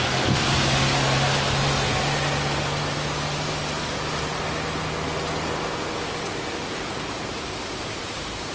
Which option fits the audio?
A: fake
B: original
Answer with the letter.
B